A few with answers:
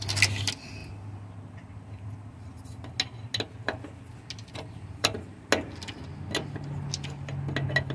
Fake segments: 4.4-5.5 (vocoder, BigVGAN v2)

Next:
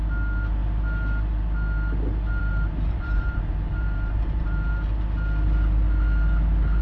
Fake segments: 2.4-4.7 (vocoder, BigVGAN v2)

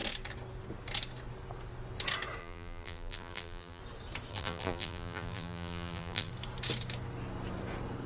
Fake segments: 2.4-3.8 (vocoder, BigVGAN v2); 4.3-6.3

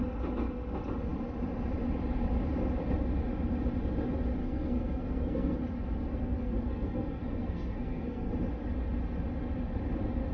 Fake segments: 4.4-5.6 (codec, SNAC); 6.1-8.3

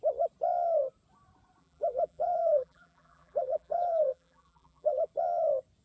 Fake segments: 1.6-5.1 (vocoder, BigVGAN v2)

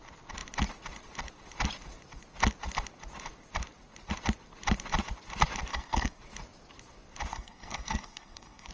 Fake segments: 5.7-6.2 (codec, SNAC); 7.3-8.7

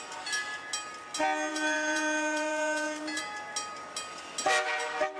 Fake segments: 1.5-3.2 (vocoder, BigVGAN v2)